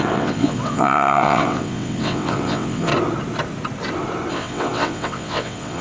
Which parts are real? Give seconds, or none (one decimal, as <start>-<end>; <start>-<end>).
2.9-4.3